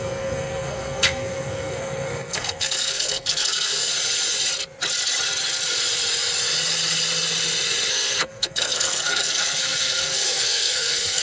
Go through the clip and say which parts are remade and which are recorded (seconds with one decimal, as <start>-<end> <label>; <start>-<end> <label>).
0.0-3.9 remade; 3.9-7.9 recorded; 7.9-11.2 remade